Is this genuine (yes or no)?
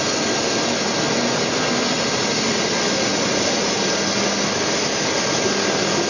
yes